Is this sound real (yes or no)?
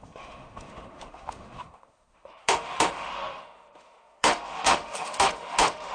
no